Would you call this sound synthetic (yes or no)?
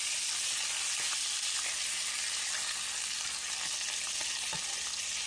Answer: no